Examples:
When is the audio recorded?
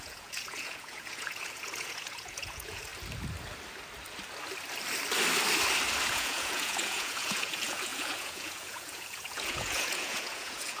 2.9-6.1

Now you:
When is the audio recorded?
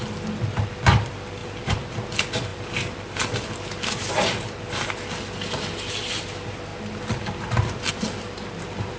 0.0-1.4; 1.9-9.0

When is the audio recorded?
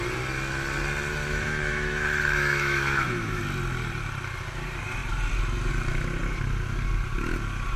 0.0-1.1; 3.4-7.8